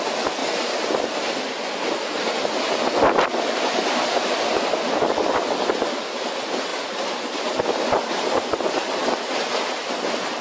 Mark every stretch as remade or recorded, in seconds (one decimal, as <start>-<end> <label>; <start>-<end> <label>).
0.0-0.4 remade; 0.4-1.0 recorded; 1.0-9.0 remade; 9.0-9.8 recorded; 9.8-10.4 remade